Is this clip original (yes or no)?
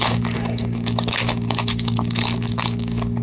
no